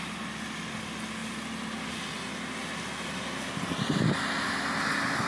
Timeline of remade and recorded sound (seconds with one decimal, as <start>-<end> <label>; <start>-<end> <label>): 0.0-5.3 recorded